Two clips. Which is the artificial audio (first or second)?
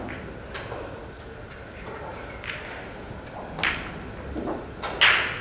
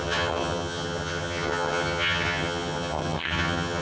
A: second